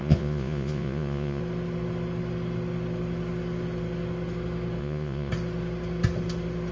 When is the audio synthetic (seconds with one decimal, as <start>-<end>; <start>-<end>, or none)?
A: 0.0-1.4; 4.8-5.3